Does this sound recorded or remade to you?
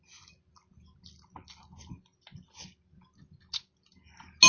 recorded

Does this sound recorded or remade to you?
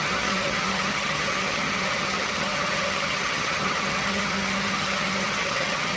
remade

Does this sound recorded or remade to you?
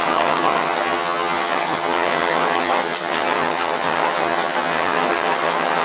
remade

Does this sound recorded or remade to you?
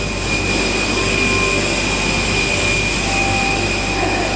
recorded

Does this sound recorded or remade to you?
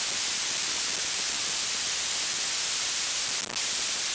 recorded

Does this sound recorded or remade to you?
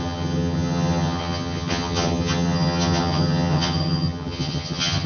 remade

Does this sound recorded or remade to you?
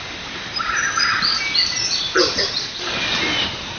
recorded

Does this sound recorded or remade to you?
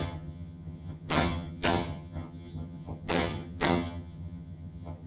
remade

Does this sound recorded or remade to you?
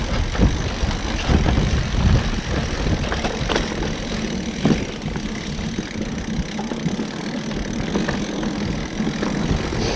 recorded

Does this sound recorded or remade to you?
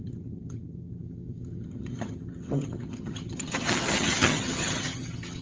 remade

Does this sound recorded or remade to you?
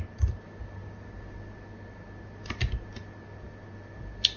recorded